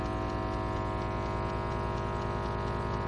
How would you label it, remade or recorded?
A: recorded